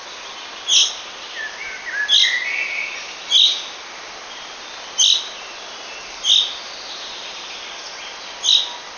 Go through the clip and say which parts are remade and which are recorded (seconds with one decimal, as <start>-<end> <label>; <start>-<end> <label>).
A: 0.0-9.0 recorded